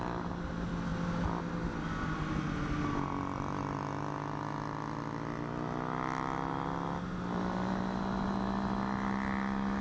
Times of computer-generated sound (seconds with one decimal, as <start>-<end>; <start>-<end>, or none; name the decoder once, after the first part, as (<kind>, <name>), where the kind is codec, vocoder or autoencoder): none